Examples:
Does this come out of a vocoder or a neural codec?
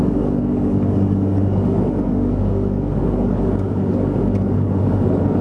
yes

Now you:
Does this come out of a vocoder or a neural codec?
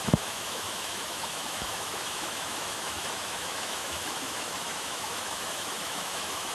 yes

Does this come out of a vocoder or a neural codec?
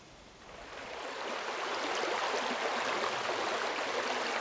no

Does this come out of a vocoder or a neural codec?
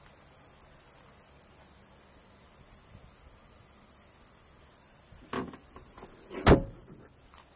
no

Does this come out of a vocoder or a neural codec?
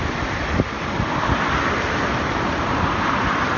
yes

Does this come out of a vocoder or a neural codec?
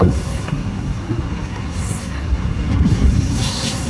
yes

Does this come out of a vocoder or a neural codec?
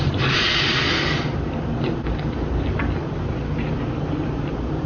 no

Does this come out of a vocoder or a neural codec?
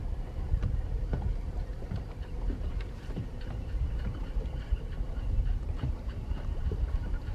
yes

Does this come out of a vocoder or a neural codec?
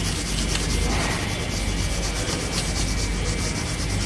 no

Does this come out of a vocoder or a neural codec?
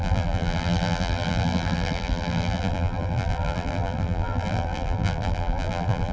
yes